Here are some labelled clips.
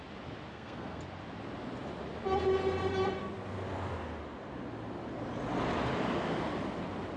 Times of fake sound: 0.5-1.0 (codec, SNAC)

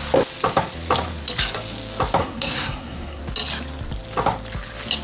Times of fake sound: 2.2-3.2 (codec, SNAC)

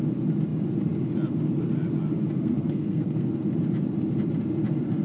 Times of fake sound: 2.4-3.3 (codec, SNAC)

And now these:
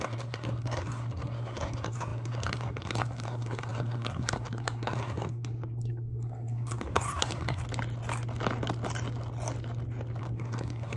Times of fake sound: 0.0-7.6 (codec, SNAC); 10.2-11.0